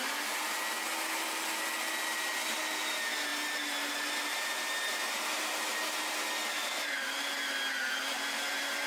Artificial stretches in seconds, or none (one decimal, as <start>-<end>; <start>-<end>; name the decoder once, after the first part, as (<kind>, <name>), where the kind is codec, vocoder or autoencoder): none